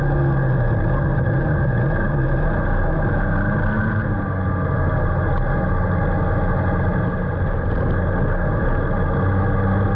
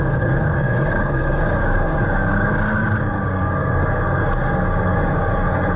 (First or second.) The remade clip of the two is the second